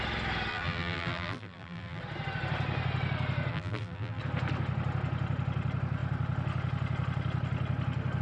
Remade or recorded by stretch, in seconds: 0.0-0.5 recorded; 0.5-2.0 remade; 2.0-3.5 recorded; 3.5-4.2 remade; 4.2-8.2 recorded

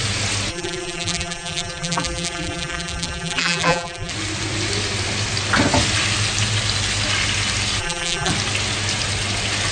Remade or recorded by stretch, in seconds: 0.0-0.5 recorded; 0.5-4.1 remade; 4.1-7.8 recorded; 7.8-8.3 remade; 8.3-9.7 recorded

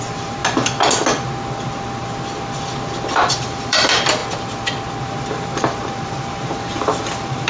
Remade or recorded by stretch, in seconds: 0.0-0.4 remade; 0.4-3.3 recorded; 3.3-4.2 remade; 4.2-5.0 recorded; 5.0-7.5 remade